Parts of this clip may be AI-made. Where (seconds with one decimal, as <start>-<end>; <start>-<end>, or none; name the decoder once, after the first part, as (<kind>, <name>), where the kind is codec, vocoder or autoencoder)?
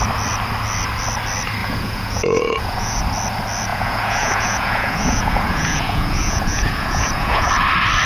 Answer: 1.6-3.0 (vocoder, Vocos); 3.7-7.5